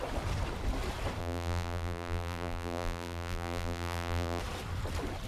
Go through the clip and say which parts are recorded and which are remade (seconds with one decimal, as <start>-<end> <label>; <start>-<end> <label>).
0.0-1.2 recorded; 1.2-4.4 remade; 4.4-5.3 recorded